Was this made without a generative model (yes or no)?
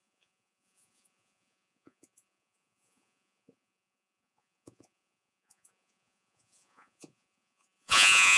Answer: no